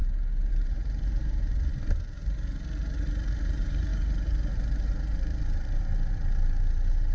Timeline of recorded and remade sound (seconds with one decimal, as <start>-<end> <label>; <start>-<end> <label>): 0.0-0.5 recorded; 0.5-7.1 remade